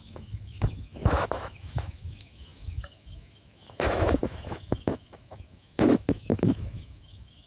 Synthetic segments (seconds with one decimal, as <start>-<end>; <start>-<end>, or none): 0.0-7.5